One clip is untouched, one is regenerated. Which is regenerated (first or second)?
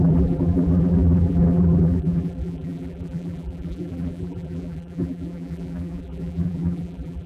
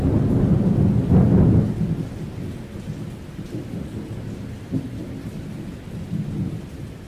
first